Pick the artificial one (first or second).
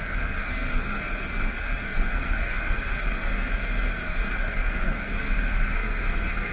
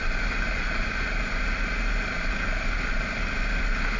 first